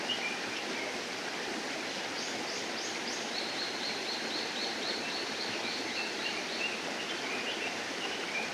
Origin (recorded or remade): remade